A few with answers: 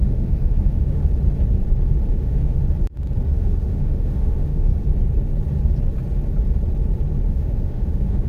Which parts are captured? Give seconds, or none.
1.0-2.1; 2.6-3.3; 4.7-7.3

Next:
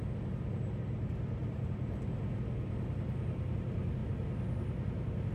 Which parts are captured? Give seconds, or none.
0.0-5.3

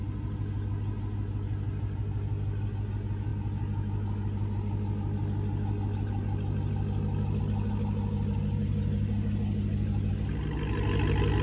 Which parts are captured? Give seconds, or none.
0.0-11.4

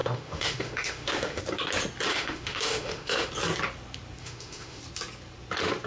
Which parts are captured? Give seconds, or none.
1.4-2.1; 3.3-4.2; 4.8-5.9

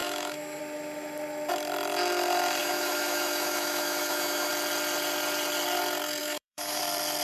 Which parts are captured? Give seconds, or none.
0.6-2.6; 4.5-6.2; 6.8-7.2

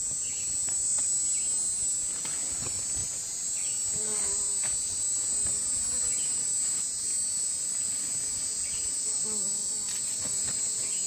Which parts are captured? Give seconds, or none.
0.0-11.1

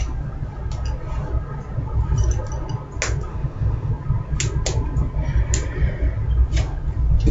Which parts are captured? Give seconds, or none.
0.0-3.3; 3.9-7.3